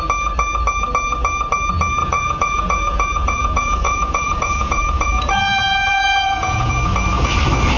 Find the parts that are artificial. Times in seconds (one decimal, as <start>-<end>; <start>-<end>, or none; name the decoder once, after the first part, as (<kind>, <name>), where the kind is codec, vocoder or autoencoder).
2.0-6.7 (vocoder, Vocos)